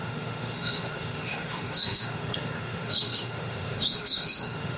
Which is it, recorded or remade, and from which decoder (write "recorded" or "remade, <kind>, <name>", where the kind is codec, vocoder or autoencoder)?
remade, autoencoder, DAC-VAE